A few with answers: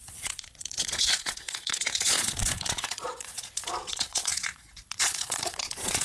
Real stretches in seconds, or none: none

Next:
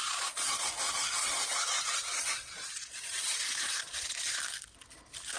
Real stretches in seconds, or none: 0.6-1.2; 4.4-5.4

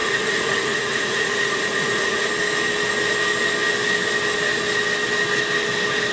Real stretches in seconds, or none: 2.3-6.1

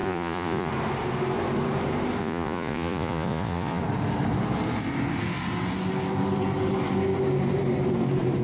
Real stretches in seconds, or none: 0.7-2.2; 3.8-8.4

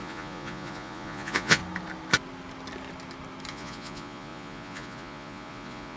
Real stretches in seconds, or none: 1.6-3.5

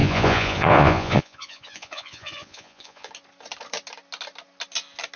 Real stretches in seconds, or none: 3.1-5.2